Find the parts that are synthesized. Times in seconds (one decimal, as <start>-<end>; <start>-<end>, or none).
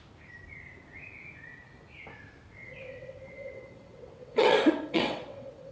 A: 2.6-5.7